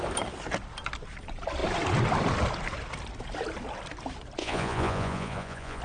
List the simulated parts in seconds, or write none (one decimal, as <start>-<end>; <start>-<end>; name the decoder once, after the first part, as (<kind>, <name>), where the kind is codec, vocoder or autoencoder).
4.4-5.8 (vocoder, Vocos)